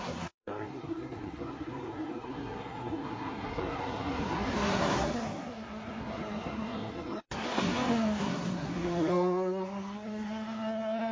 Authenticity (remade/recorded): remade